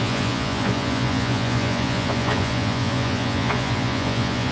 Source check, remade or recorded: remade